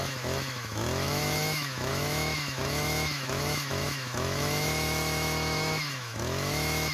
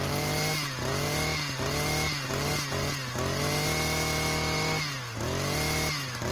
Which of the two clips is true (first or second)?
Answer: second